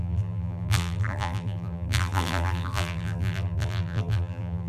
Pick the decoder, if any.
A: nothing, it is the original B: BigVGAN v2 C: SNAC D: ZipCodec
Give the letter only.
B